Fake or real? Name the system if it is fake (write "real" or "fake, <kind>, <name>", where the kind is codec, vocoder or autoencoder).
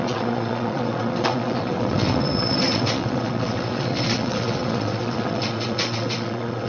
fake, vocoder, WaveNeXt